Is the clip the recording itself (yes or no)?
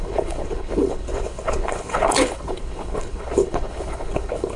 no